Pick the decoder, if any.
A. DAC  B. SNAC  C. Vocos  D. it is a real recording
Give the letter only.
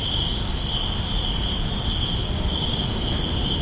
D